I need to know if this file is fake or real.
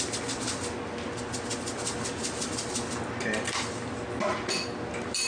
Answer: real